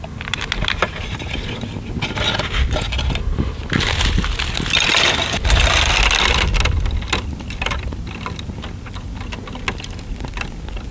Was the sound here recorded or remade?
recorded